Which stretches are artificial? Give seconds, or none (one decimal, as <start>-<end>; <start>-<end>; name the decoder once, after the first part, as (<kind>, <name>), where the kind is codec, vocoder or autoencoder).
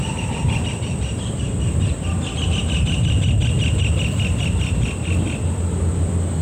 none